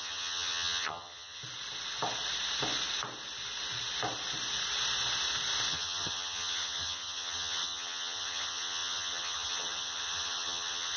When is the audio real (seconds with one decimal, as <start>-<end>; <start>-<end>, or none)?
1.4-5.7